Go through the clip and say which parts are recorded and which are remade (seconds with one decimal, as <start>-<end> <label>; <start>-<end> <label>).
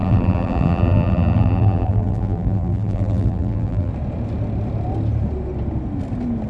0.0-3.9 remade; 3.9-6.5 recorded